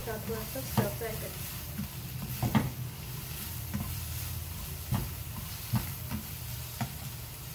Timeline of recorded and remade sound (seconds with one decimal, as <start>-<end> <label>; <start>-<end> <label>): 0.0-1.1 recorded; 1.1-7.5 remade